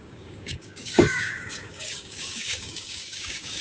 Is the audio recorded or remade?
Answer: remade